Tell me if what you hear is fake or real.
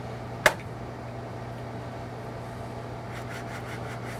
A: real